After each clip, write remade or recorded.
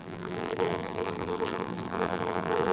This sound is remade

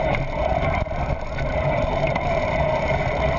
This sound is remade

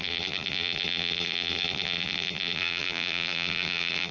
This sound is remade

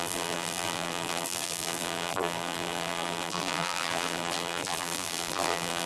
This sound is remade